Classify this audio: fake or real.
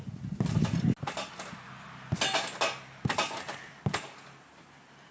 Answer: real